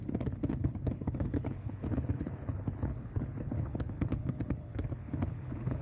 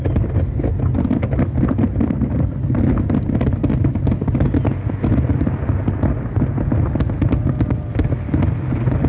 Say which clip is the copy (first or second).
first